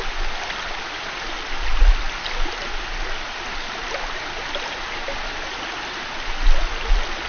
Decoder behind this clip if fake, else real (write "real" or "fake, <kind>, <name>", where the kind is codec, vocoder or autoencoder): real